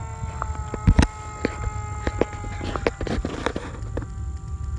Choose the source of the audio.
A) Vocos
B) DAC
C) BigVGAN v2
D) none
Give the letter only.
D